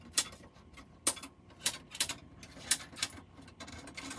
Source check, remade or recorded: recorded